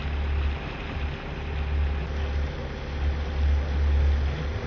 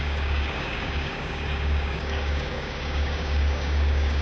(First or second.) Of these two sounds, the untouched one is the first